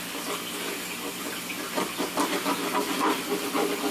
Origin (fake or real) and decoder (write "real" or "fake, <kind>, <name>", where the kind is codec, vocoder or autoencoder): real